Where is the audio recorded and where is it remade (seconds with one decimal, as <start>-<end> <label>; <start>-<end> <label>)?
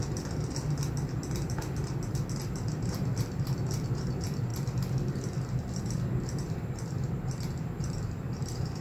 0.0-8.8 remade